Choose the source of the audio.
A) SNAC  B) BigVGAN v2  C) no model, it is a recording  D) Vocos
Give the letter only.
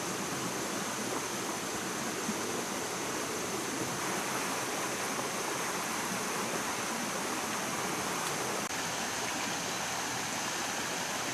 C